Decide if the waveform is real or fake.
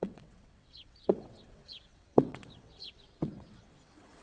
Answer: fake